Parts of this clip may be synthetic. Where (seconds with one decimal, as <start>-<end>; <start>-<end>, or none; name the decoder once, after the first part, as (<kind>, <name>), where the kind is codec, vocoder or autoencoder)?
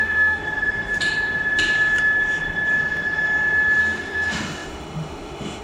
0.0-0.4 (autoencoder, DAC-VAE); 3.8-5.6